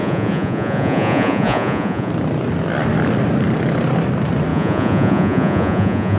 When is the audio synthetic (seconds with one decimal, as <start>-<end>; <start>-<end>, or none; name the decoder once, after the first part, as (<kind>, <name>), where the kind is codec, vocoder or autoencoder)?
0.0-2.1 (vocoder, Vocos); 4.5-6.2